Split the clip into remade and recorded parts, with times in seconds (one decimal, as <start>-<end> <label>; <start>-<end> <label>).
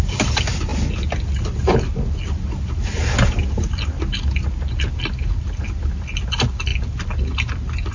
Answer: 0.0-7.9 recorded